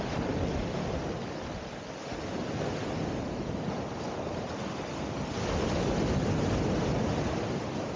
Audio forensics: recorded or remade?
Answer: recorded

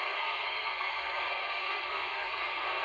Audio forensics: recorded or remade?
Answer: remade